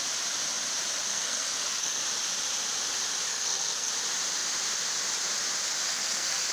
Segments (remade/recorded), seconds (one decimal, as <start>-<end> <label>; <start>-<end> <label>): 0.0-1.1 recorded; 1.1-2.0 remade; 2.0-3.3 recorded; 3.3-3.9 remade; 3.9-5.9 recorded; 5.9-6.5 remade